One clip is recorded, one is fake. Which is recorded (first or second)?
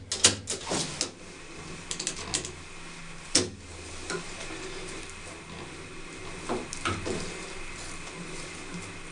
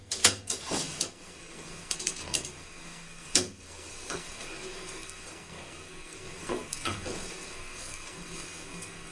first